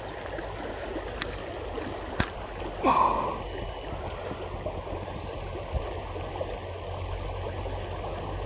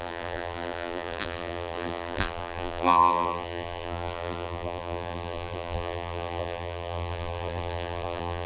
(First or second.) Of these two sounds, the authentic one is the first